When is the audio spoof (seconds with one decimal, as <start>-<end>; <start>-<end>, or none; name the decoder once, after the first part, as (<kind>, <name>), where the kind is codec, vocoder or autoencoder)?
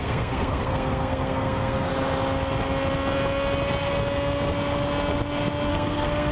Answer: 0.0-1.9 (codec, SNAC); 5.7-6.3